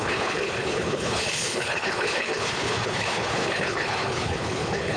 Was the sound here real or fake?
fake